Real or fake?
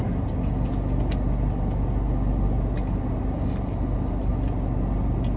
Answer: real